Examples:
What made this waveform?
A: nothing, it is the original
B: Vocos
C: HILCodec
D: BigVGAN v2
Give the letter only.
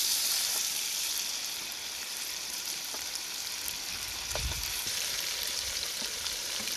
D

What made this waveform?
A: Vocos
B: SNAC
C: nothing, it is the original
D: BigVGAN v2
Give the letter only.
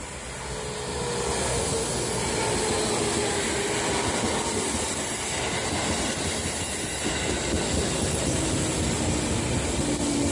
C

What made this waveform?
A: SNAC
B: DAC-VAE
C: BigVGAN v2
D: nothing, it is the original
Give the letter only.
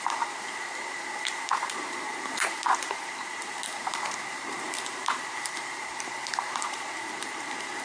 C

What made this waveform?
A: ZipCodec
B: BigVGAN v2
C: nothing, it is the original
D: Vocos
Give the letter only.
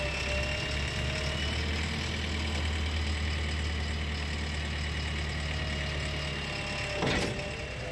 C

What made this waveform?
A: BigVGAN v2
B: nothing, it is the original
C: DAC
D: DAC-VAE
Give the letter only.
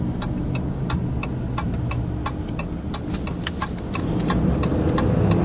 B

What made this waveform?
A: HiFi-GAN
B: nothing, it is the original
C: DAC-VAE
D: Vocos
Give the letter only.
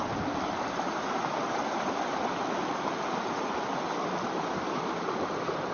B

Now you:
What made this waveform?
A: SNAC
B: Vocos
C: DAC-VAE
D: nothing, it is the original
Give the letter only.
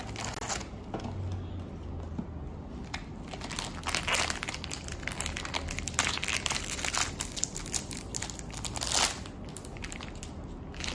D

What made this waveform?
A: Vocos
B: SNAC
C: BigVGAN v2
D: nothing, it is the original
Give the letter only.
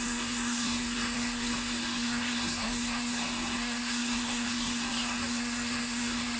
B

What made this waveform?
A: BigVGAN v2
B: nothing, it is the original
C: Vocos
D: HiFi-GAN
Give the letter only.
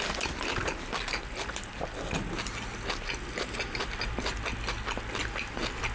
B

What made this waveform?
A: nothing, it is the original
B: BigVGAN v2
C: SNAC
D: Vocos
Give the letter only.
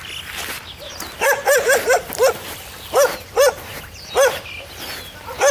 A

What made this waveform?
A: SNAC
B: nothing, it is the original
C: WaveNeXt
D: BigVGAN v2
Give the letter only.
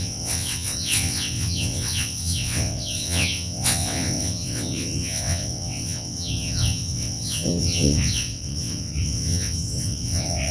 C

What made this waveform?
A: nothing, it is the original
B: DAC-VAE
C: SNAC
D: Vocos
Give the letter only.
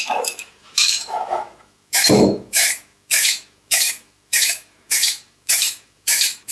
B